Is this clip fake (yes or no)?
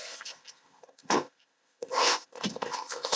yes